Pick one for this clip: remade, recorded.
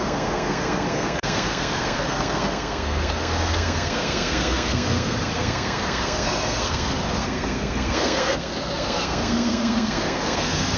remade